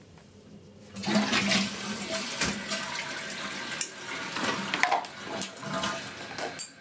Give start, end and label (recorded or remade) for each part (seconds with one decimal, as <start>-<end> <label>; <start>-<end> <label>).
0.0-6.8 recorded